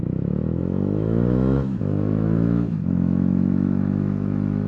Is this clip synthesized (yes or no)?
yes